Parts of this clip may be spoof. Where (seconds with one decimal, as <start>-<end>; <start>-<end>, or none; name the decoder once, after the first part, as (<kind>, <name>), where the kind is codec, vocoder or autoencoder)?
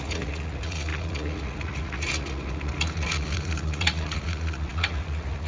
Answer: 0.0-5.5 (vocoder, Vocos)